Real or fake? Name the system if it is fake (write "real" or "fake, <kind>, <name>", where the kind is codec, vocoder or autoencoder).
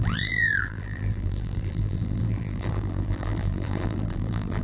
fake, vocoder, BigVGAN v2